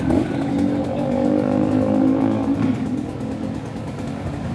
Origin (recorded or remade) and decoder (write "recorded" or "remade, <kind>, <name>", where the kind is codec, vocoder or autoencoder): remade, codec, DAC